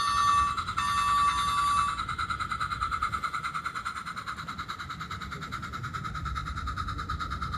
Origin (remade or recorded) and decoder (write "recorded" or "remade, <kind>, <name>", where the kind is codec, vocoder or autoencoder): recorded